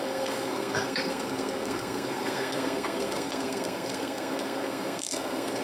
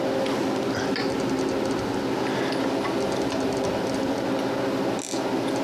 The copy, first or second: first